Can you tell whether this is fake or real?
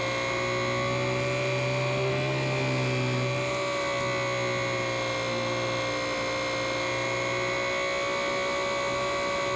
real